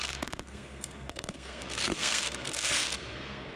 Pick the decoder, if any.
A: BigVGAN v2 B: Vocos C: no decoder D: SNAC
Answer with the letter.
D